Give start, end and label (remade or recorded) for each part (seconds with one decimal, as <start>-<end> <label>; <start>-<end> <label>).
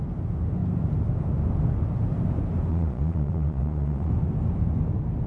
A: 0.0-2.7 recorded; 2.7-4.1 remade; 4.1-5.3 recorded